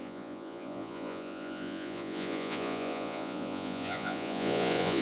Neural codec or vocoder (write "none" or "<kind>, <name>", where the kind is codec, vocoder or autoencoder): vocoder, Vocos